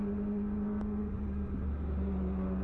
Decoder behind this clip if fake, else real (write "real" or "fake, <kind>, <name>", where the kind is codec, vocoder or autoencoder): real